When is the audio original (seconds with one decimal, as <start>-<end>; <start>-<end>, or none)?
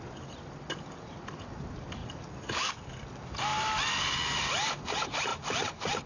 0.0-6.1